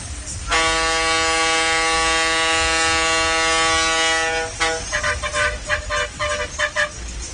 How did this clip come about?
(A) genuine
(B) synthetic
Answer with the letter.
A